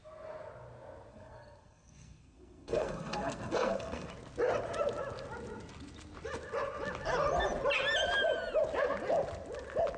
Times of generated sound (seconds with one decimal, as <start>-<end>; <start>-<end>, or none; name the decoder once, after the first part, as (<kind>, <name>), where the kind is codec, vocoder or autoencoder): 1.1-4.1 (codec, SNAC)